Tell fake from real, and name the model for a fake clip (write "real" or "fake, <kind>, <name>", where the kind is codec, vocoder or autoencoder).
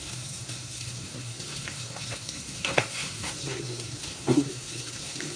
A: fake, codec, SNAC